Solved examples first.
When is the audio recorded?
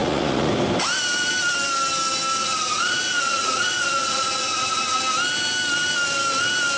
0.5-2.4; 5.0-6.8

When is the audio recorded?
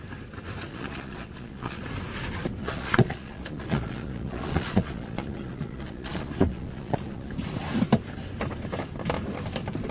0.0-0.7; 1.8-2.6; 7.3-9.9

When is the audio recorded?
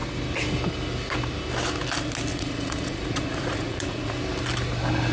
0.0-2.3; 4.2-5.1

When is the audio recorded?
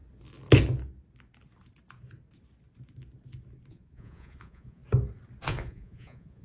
0.0-3.7; 4.8-5.4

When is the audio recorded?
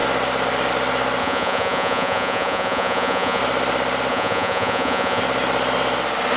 0.0-1.2; 3.4-4.1; 5.2-6.4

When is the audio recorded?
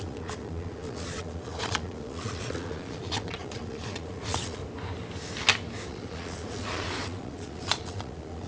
4.6-5.9